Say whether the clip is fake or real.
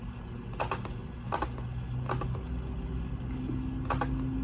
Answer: real